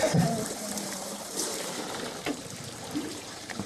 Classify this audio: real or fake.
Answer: fake